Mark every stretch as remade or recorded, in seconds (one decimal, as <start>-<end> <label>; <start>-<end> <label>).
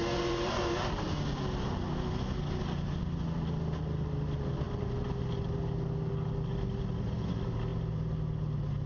0.0-8.9 recorded